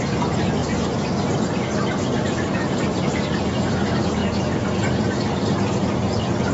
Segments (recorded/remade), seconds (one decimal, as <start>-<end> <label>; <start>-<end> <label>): 0.0-6.5 recorded